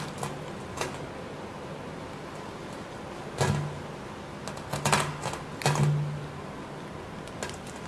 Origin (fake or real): real